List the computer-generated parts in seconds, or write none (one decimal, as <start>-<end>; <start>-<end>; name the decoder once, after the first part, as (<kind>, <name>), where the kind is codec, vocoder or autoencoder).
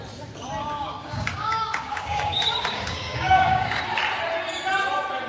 0.6-3.8 (codec, DAC)